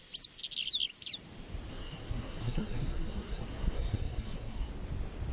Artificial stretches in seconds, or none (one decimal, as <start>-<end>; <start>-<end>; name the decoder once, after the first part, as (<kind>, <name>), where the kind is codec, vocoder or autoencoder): 1.7-4.7 (codec, SNAC)